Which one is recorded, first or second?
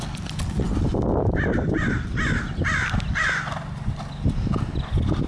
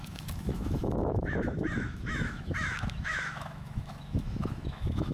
first